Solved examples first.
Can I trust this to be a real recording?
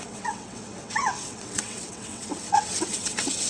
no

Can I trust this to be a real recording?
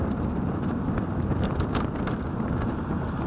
yes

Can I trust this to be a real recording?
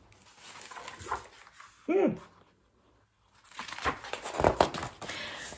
yes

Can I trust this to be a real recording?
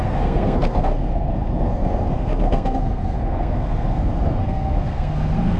no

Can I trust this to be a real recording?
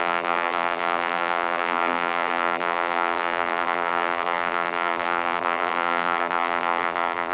no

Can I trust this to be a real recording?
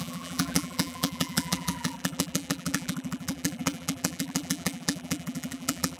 no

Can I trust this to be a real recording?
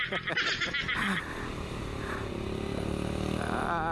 yes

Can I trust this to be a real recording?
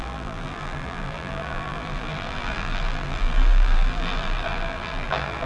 no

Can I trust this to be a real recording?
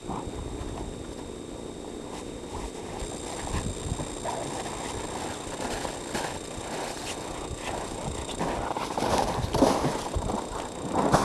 yes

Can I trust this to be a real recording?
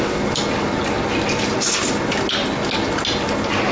yes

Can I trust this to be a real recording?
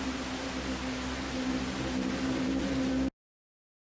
yes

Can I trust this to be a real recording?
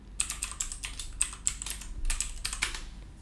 yes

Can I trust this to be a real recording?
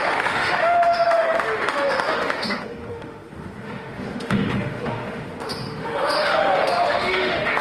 no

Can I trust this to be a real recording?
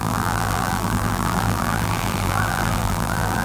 no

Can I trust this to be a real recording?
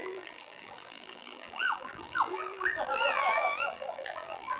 no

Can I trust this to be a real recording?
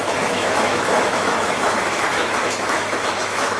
no